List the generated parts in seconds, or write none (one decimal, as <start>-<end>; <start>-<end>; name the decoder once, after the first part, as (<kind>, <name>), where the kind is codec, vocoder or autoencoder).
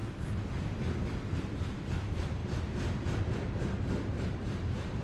1.0-2.4 (vocoder, BigVGAN v2); 3.2-5.0